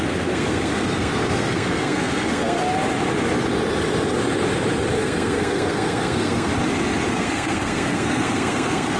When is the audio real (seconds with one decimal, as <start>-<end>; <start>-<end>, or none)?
2.6-4.9; 6.5-7.1